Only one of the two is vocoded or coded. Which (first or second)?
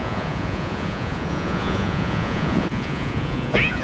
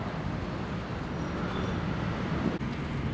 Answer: first